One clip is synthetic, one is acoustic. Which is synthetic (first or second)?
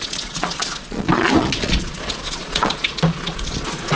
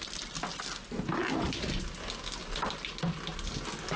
first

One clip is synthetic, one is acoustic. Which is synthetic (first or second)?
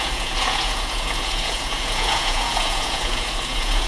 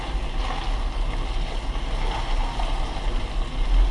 first